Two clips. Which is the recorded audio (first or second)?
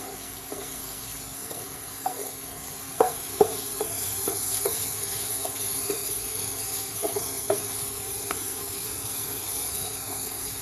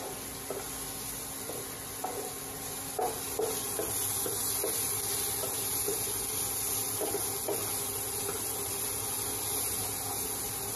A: second